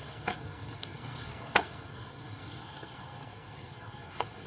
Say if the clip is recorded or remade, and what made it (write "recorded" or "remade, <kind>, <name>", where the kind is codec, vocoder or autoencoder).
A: remade, codec, SNAC